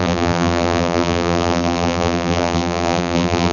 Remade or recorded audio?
remade